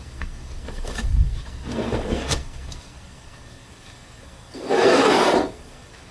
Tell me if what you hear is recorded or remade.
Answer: remade